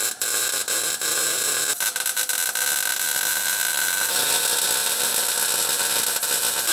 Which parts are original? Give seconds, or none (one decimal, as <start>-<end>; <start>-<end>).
0.0-2.9; 4.1-4.8; 5.3-6.7